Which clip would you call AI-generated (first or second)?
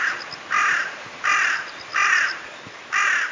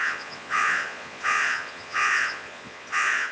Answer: second